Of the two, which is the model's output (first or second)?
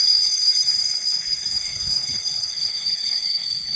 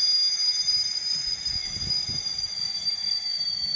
first